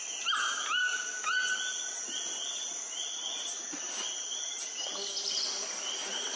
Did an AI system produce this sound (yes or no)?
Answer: no